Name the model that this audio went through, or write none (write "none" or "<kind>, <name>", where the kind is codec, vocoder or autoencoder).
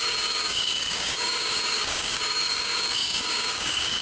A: codec, DAC